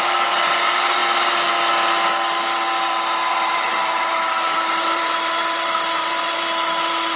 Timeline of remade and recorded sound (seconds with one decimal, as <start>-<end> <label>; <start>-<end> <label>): 0.0-1.0 remade; 1.0-3.3 recorded; 3.3-7.2 remade

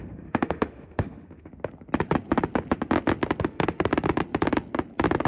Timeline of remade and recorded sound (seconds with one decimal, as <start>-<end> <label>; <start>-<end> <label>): 0.0-1.5 remade; 1.5-3.4 recorded; 3.4-3.9 remade; 3.9-5.3 recorded

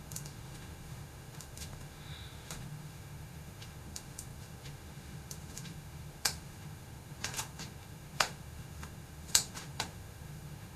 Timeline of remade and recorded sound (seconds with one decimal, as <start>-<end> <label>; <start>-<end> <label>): 0.0-10.8 remade

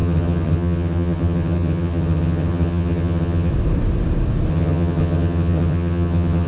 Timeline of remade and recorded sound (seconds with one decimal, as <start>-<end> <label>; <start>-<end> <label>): 0.0-3.5 remade; 3.5-4.5 recorded; 4.5-6.5 remade

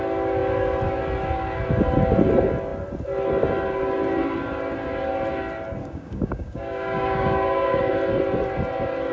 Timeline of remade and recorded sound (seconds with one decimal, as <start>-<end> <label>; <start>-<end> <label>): 0.0-5.8 recorded; 5.8-7.8 remade; 7.8-9.1 recorded